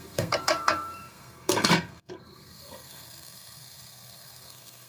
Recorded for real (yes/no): no